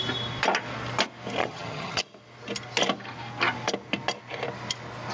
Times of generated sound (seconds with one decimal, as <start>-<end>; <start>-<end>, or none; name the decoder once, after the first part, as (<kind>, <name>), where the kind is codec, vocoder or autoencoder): 1.4-2.0 (vocoder, HiFi-GAN)